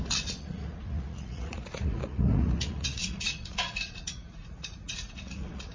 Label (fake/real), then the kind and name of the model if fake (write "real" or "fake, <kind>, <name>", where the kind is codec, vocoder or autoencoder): fake, vocoder, Vocos